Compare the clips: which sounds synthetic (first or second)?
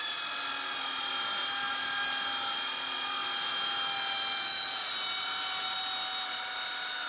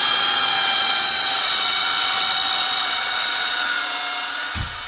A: second